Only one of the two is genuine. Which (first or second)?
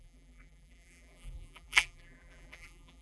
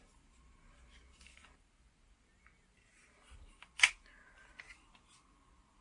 second